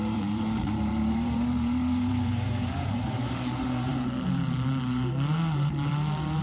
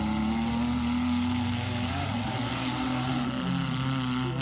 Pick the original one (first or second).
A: second